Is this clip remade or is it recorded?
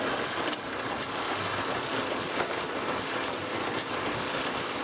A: recorded